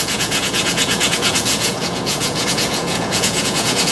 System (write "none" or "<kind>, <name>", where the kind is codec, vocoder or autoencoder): vocoder, Vocos